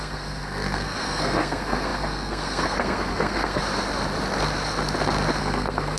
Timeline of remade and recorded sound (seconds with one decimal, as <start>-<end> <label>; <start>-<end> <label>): 0.0-3.6 remade; 3.6-5.4 recorded; 5.4-6.0 remade